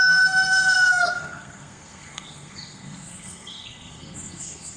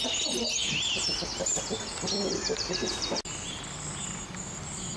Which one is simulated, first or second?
first